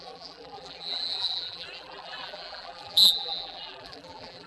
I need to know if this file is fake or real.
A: fake